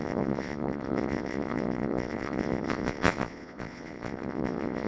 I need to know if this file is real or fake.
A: fake